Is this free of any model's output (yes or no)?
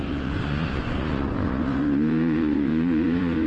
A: no